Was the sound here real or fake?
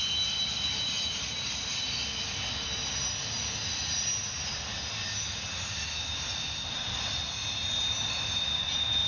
real